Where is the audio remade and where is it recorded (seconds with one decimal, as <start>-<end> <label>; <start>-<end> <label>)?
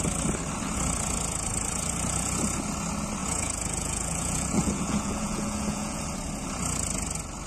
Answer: 0.0-3.2 recorded; 3.2-6.0 remade; 6.0-7.5 recorded